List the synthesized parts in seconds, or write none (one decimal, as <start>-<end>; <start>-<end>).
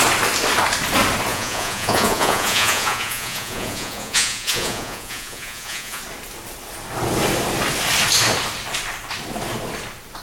1.3-6.0